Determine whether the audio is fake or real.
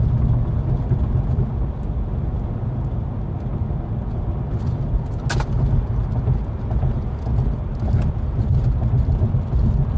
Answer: real